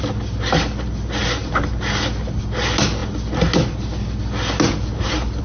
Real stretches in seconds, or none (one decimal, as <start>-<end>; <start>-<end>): 0.0-5.4